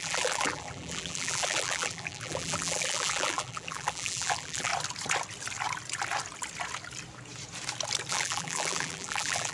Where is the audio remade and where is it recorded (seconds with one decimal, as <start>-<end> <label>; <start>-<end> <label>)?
0.0-4.7 remade; 4.7-8.1 recorded; 8.1-9.5 remade